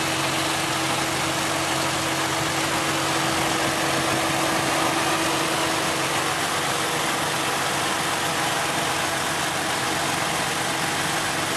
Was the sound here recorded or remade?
recorded